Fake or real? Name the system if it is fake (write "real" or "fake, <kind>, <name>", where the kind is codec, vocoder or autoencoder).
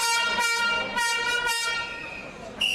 fake, vocoder, BigVGAN v2